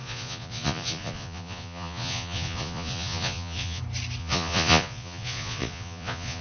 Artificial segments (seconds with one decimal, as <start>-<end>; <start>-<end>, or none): 0.0-3.8; 4.2-6.4